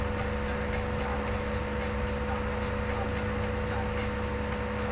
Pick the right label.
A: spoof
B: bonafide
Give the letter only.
B